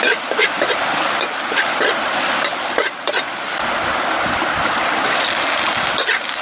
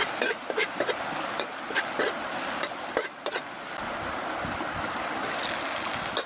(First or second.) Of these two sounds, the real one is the second